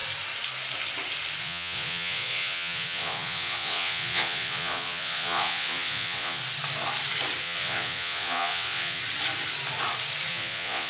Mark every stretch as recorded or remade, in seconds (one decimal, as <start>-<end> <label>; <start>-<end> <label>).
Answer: 0.0-1.4 recorded; 1.4-6.4 remade; 6.4-7.4 recorded; 7.4-9.0 remade; 9.0-10.3 recorded; 10.3-10.9 remade